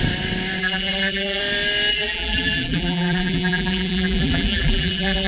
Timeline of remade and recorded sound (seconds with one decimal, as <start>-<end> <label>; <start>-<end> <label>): 0.0-0.6 recorded; 0.6-1.4 remade; 1.4-1.9 recorded; 1.9-5.3 remade